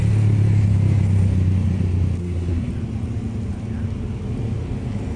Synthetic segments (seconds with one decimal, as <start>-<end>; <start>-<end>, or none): 2.2-2.7